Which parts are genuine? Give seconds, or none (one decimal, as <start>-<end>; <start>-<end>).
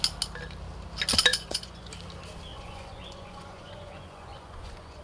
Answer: 0.0-1.3; 1.9-2.5